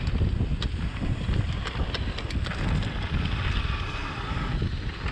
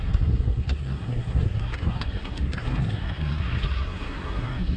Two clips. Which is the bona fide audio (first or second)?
first